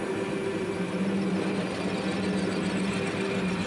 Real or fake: real